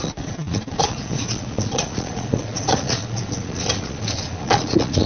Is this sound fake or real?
fake